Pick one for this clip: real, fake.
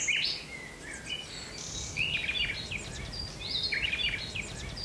real